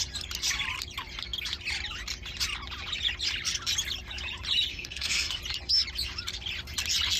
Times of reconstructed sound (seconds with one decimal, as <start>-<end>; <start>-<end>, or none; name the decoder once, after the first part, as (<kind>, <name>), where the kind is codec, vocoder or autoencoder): 4.7-5.4 (codec, SNAC)